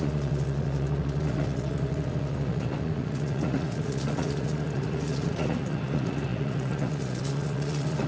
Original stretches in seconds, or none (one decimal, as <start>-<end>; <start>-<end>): none